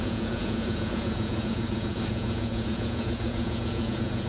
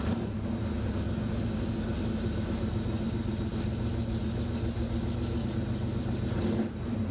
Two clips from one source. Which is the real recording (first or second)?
second